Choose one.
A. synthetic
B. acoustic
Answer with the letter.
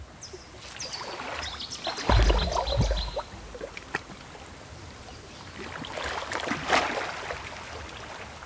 B